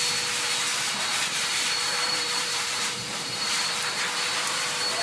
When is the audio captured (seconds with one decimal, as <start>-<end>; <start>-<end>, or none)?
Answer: 0.0-0.7; 3.7-5.0